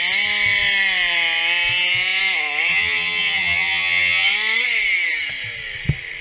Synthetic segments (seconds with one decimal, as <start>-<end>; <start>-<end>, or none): 2.7-4.3